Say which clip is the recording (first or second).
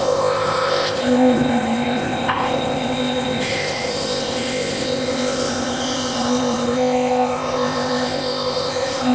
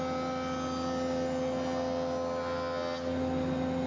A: second